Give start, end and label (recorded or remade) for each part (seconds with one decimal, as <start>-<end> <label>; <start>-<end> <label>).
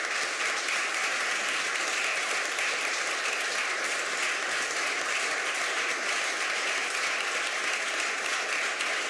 0.0-9.1 recorded